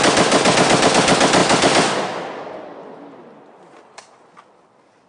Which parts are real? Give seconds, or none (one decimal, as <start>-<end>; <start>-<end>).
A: 0.0-5.1